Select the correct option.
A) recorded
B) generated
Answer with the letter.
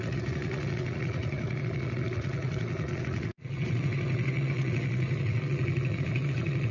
B